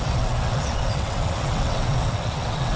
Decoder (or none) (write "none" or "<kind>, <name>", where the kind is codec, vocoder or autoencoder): vocoder, WaveNeXt